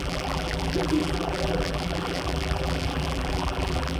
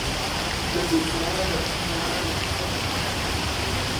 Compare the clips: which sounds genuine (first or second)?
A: second